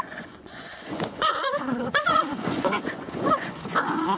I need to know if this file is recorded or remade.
remade